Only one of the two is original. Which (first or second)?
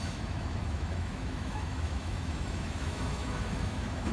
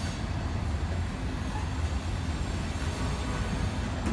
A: second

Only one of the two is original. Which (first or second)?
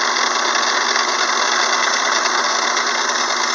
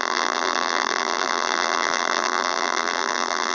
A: first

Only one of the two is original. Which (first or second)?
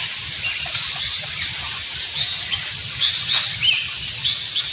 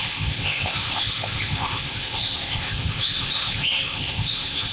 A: first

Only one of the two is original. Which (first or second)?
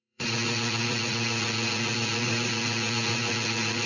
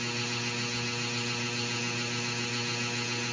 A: second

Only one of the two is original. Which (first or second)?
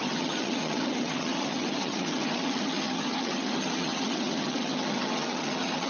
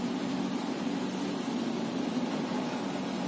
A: second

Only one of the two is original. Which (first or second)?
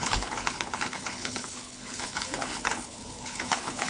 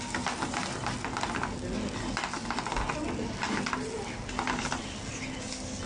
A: second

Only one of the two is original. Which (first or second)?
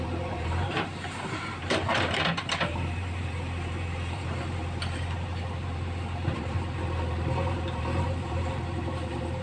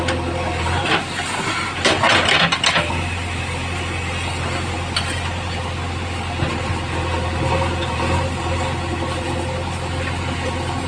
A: second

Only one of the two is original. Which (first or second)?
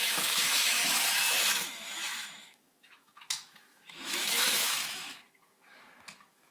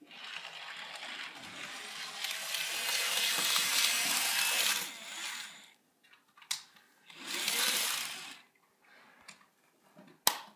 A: second